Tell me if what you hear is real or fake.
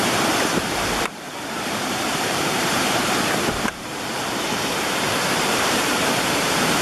fake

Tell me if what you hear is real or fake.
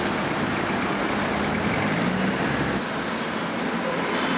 real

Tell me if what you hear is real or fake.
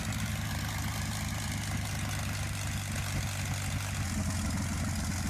real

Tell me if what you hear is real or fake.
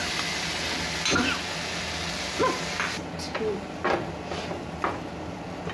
real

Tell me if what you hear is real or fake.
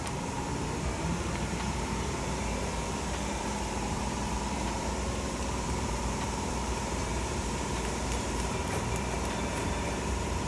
fake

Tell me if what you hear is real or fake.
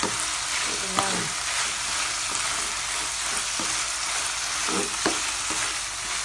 real